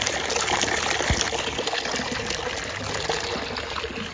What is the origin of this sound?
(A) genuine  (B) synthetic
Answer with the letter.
A